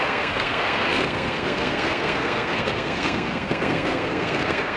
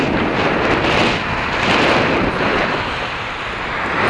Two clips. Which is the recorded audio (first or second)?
second